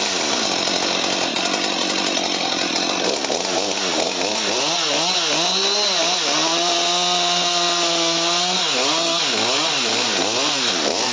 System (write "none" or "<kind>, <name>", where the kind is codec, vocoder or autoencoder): none